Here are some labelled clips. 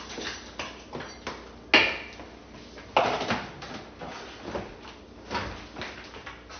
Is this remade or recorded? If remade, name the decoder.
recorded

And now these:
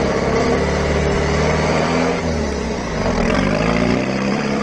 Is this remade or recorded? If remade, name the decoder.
remade, vocoder, BigVGAN v2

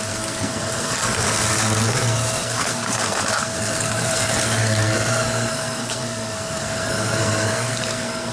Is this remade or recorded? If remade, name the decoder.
remade, codec, SNAC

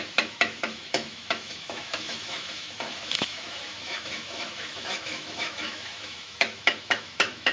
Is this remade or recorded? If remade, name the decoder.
remade, autoencoder, DAC-VAE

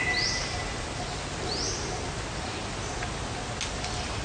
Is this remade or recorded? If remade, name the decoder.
recorded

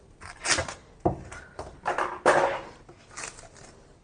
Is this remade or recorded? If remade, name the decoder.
recorded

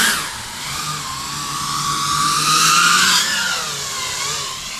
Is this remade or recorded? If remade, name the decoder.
recorded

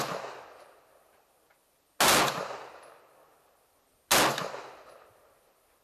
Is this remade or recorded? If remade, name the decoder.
recorded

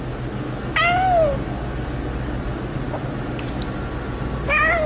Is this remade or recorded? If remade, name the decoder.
recorded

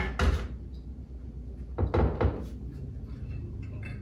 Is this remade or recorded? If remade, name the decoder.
recorded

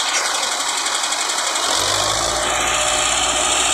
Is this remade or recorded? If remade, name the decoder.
recorded